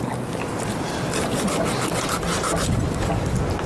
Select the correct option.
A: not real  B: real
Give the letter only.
B